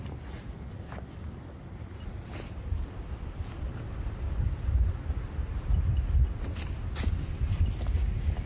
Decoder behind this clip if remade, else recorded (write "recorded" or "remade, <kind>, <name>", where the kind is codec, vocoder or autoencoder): recorded